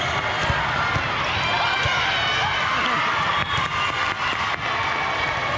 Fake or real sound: real